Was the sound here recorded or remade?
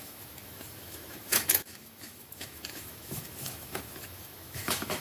remade